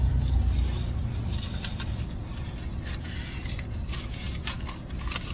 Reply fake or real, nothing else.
real